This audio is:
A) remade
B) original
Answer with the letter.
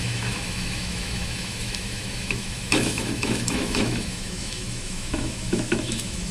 A